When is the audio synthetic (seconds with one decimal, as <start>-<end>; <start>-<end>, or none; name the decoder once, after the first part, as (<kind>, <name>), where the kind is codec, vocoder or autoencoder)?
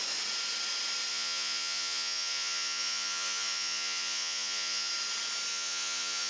1.1-4.9 (vocoder, Vocos); 5.5-6.3